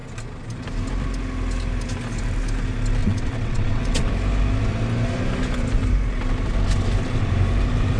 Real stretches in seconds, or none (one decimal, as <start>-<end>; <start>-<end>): 0.0-3.0; 4.1-8.0